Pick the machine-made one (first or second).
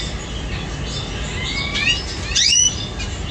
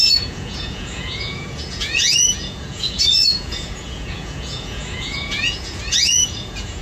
second